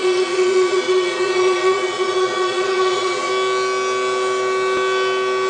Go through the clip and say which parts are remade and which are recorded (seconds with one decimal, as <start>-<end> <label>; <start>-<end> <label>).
0.0-3.3 remade; 3.3-5.5 recorded